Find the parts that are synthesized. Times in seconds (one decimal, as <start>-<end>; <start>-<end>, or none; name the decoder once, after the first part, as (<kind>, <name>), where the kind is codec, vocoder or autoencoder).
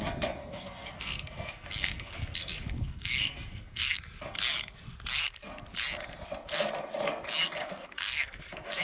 0.4-4.0 (codec, SNAC); 7.6-8.8